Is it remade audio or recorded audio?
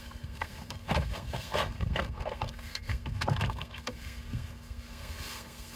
remade